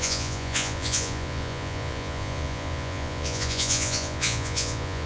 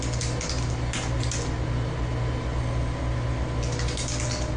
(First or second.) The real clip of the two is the second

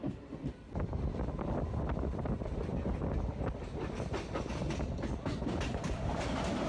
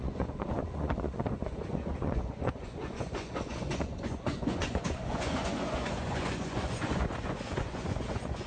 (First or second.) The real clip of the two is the first